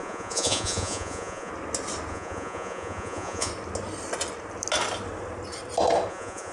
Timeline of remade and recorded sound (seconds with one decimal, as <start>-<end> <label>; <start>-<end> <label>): 0.0-1.5 remade; 1.5-2.1 recorded; 2.1-3.5 remade; 3.5-6.1 recorded; 6.1-6.5 remade